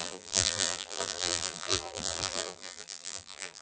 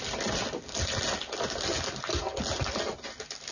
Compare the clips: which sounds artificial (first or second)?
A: first